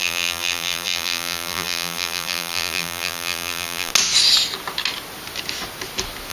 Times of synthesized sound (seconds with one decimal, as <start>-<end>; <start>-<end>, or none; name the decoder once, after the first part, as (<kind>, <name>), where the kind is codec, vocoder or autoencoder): 0.0-3.9 (vocoder, BigVGAN v2)